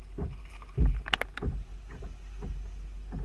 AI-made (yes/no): no